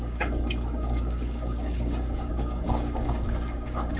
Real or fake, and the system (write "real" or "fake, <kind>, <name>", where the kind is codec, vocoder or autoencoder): fake, codec, DAC